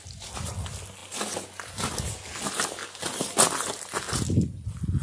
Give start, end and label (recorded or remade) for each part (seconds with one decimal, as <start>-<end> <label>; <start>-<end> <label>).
0.0-5.0 recorded